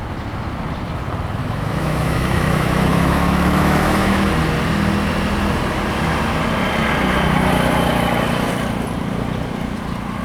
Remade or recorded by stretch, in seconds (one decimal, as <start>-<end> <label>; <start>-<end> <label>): 0.0-1.4 recorded; 1.4-4.3 remade; 4.3-10.2 recorded